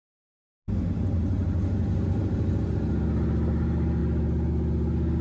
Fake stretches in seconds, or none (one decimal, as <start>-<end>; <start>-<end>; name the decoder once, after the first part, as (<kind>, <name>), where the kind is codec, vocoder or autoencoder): 1.7-2.7 (vocoder, BigVGAN v2)